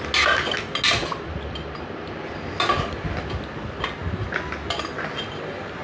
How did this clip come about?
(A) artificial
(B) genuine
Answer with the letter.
B